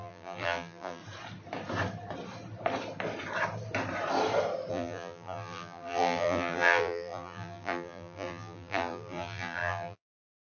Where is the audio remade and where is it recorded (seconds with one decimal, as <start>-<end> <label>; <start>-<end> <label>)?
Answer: 0.0-1.0 remade; 1.0-4.7 recorded; 4.7-10.6 remade

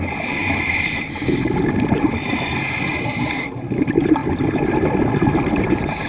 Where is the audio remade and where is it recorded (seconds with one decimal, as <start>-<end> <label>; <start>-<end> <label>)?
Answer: 0.0-4.2 remade; 4.2-5.6 recorded; 5.6-6.1 remade

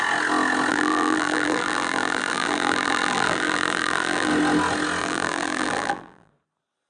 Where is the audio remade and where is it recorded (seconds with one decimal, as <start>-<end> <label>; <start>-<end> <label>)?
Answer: 0.0-0.7 recorded; 0.7-4.3 remade; 4.3-5.0 recorded; 5.0-6.3 remade; 6.3-6.9 recorded

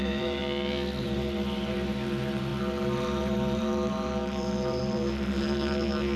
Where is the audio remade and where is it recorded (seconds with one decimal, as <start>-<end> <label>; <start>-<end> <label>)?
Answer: 0.0-0.4 remade; 0.4-1.0 recorded; 1.0-6.2 remade

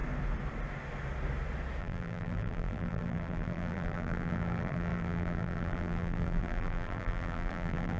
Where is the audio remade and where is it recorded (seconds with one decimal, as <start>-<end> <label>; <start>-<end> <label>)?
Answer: 0.0-1.8 recorded; 1.8-8.0 remade